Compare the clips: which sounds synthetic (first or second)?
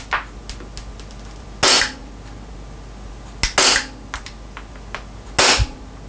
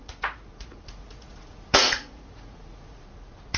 second